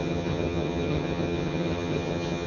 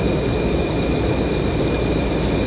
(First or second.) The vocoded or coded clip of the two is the first